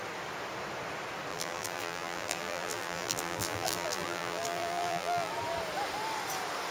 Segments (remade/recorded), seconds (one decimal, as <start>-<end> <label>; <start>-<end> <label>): 0.0-1.3 recorded; 1.3-5.3 remade; 5.3-6.7 recorded